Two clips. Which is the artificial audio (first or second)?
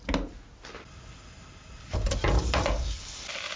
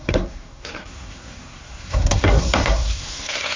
second